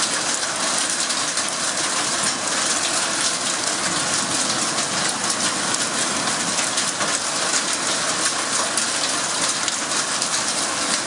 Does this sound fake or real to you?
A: real